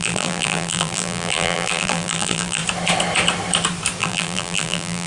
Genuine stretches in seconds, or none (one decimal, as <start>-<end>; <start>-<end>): 2.6-4.0